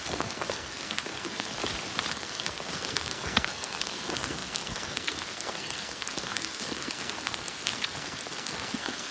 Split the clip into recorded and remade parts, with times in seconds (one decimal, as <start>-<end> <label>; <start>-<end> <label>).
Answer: 0.0-1.6 remade; 1.6-2.1 recorded; 2.1-9.1 remade